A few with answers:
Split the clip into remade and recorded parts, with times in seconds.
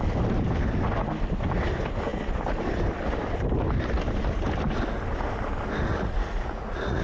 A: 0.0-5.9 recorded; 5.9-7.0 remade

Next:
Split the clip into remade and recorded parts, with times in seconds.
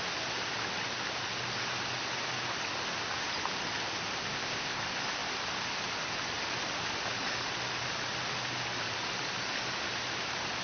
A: 0.0-4.3 recorded; 4.3-4.8 remade; 4.8-10.6 recorded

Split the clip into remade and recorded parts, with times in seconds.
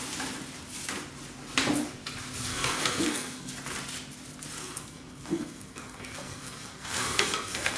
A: 0.0-2.5 recorded; 2.5-3.5 remade; 3.5-4.6 recorded; 4.6-7.8 remade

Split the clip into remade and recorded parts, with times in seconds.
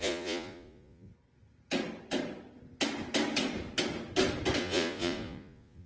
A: 0.0-1.1 remade; 1.1-4.6 recorded; 4.6-5.9 remade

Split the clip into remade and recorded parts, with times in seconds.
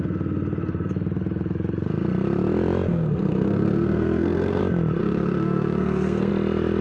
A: 0.0-2.9 recorded; 2.9-4.6 remade; 4.6-5.0 recorded; 5.0-6.3 remade; 6.3-6.8 recorded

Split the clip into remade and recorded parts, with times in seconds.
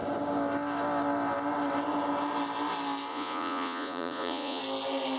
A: 0.0-3.1 recorded; 3.1-4.6 remade; 4.6-5.2 recorded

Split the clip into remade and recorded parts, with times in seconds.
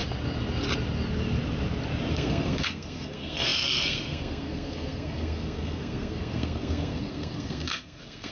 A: 0.0-2.1 recorded; 2.1-8.3 remade